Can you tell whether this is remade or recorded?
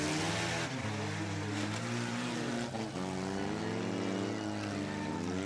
recorded